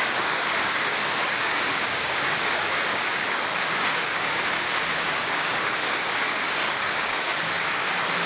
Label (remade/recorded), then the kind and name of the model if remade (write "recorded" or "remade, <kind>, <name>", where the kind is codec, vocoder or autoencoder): remade, codec, DAC